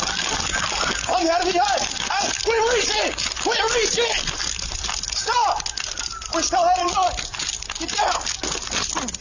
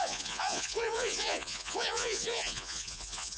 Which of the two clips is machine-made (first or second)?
second